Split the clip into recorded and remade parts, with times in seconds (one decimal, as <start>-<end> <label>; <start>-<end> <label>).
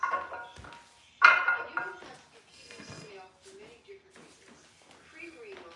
0.0-2.5 recorded; 2.5-3.1 remade; 3.1-5.8 recorded